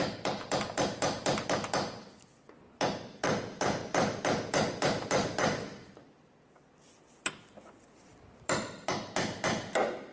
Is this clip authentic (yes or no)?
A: no